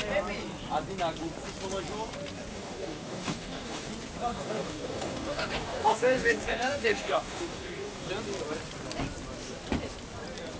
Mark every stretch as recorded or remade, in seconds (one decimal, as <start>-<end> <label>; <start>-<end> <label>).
0.0-2.5 recorded; 2.5-3.9 remade; 3.9-4.3 recorded; 4.3-8.1 remade; 8.1-10.6 recorded